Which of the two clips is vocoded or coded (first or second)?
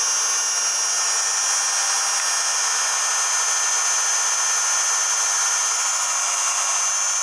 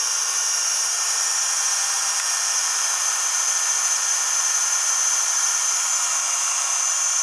second